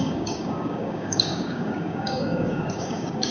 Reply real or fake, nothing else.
fake